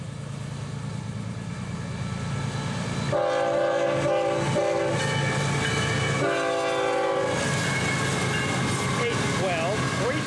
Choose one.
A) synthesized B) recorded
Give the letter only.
B